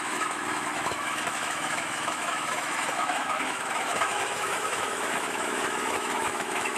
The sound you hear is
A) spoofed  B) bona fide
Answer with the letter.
A